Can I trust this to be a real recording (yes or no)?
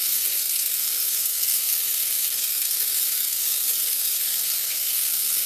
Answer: no